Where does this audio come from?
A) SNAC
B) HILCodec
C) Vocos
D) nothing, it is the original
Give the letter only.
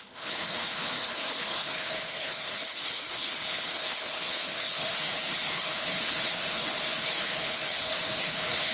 B